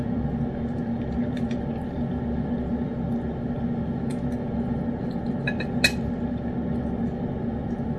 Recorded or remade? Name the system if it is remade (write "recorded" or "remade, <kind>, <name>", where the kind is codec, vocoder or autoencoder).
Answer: recorded